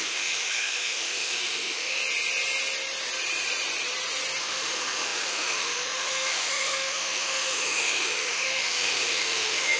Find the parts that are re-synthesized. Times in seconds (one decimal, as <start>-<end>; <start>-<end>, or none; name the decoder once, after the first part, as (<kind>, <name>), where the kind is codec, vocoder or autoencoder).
0.0-2.0 (autoencoder, DAC-VAE); 4.4-9.8